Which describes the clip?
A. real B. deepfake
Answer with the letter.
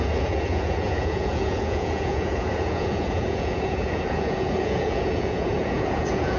B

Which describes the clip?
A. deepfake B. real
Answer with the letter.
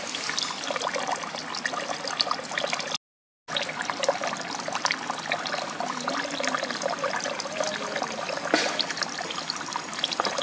B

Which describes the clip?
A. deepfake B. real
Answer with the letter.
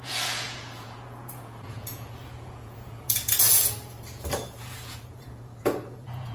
A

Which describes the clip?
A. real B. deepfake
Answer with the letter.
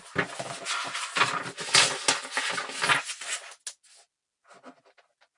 A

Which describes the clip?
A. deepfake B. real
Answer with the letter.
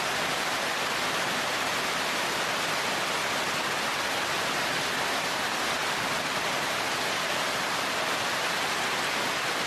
B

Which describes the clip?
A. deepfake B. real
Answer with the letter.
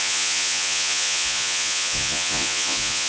A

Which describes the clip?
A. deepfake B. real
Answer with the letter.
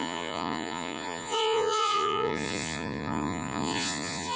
A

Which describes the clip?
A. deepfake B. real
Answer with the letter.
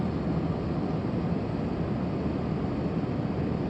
B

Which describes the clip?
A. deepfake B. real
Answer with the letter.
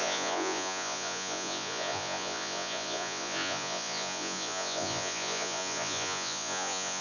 A